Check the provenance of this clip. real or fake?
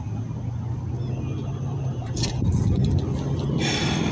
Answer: real